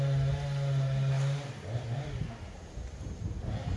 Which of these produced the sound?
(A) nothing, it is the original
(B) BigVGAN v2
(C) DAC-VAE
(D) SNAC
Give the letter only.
A